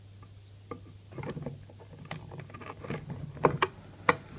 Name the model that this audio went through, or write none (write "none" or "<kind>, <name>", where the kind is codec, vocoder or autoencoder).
none